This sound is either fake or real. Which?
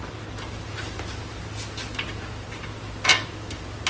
real